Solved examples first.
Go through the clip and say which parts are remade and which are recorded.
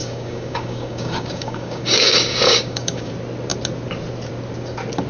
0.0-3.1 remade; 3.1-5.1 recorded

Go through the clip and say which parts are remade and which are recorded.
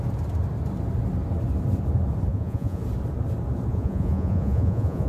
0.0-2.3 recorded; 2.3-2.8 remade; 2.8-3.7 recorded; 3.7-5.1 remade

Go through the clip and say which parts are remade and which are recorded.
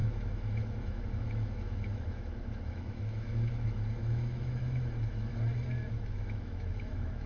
0.0-5.3 remade; 5.3-5.9 recorded; 5.9-7.3 remade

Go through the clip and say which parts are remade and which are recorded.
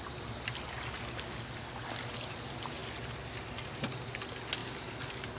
0.0-5.4 recorded